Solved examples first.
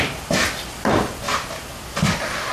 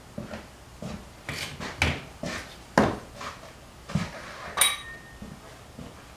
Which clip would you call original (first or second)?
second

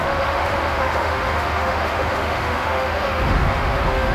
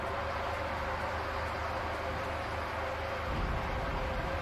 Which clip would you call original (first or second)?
second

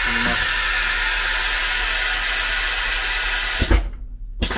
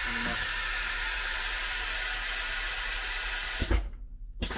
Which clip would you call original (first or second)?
first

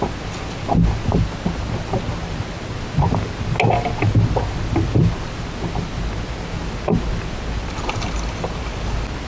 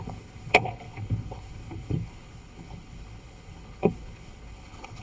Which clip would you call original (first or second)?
first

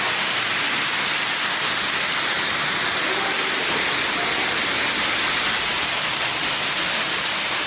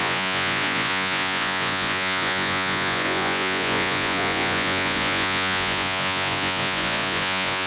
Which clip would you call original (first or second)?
first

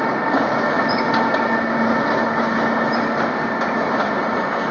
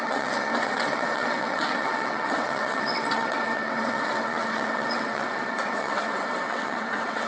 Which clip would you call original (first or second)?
first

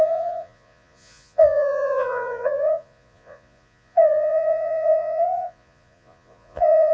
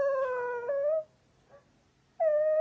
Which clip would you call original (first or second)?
second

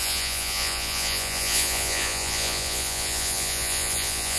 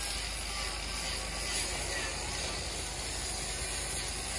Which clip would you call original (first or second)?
second